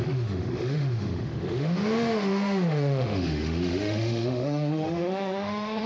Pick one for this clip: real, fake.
fake